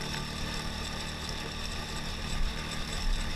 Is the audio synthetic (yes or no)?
yes